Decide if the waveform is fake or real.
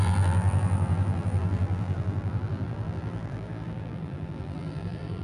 fake